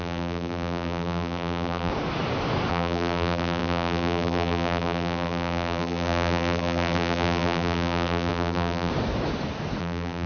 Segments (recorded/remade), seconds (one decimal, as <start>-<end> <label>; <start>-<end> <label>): 0.0-1.9 remade; 1.9-2.7 recorded; 2.7-8.9 remade; 8.9-9.8 recorded; 9.8-10.3 remade